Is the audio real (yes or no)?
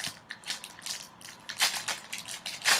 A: yes